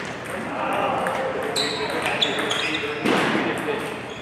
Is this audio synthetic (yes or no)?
no